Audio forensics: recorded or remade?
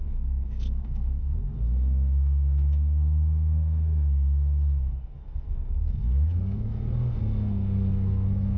remade